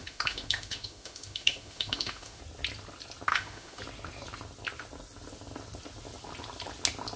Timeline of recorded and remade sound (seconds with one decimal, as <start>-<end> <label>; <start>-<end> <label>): 0.0-2.4 remade; 2.4-3.3 recorded; 3.3-3.8 remade; 3.8-7.2 recorded